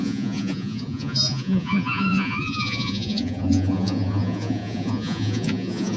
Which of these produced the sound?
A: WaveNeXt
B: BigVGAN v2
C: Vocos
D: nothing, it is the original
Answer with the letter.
C